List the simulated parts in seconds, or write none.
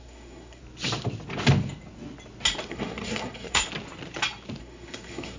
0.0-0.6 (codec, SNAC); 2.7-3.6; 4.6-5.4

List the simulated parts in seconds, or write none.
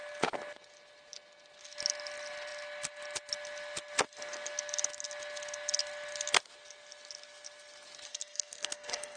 8.1-9.2 (codec, SNAC)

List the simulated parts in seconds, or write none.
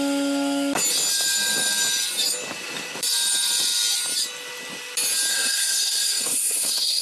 5.3-7.0 (codec, SNAC)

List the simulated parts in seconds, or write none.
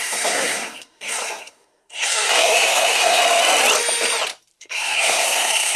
0.0-3.2 (codec, SNAC); 4.6-5.8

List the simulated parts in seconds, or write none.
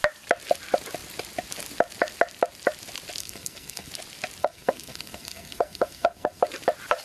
3.2-3.9 (codec, SNAC); 4.4-6.4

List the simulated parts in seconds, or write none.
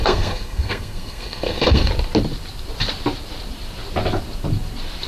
0.0-1.9 (codec, SNAC)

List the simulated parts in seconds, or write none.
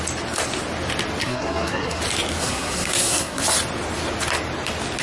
1.2-2.0 (codec, SNAC); 2.4-3.4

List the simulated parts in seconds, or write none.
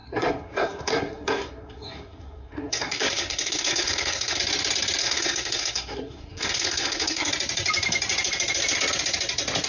0.0-4.4 (codec, SNAC); 5.0-7.3